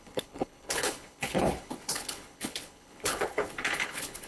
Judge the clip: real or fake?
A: fake